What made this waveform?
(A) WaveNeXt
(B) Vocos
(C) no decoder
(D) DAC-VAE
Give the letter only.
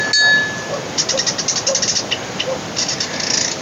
C